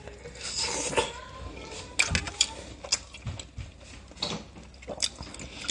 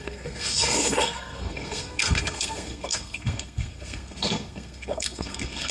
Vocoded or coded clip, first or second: second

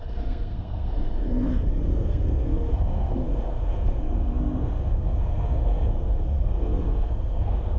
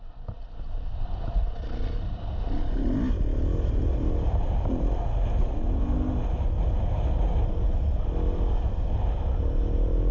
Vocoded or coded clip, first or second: first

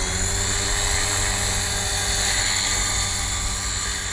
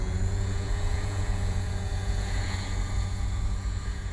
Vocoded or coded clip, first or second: second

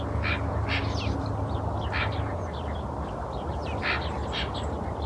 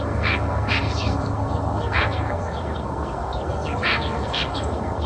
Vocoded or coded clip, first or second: second